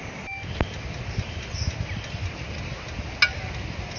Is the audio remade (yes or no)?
no